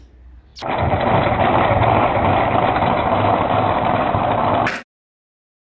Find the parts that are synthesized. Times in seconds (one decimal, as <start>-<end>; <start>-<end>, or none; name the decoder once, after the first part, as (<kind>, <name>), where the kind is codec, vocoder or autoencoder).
none